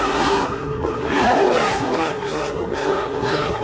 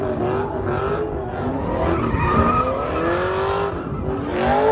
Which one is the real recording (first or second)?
second